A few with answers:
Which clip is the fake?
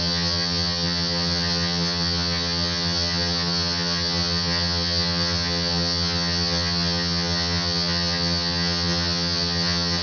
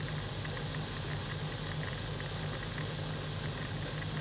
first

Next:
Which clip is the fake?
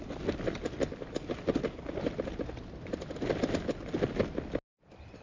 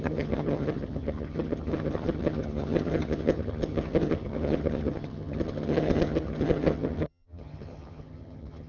second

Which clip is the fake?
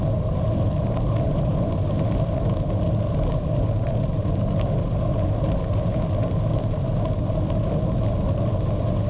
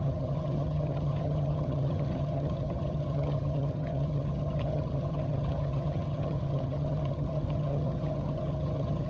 second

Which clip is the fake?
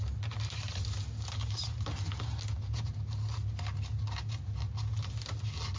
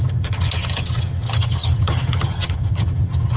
second